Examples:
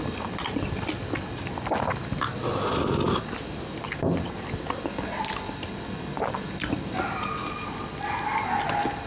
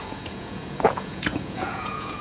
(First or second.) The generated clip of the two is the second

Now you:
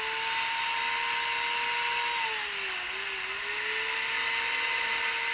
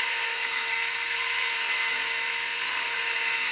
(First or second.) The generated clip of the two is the second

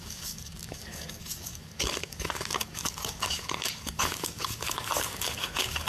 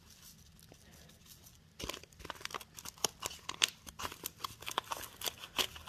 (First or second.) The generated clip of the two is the first